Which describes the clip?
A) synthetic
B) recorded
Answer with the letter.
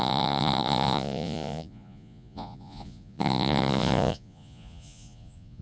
A